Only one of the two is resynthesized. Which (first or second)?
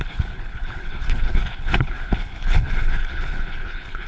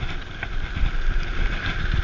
first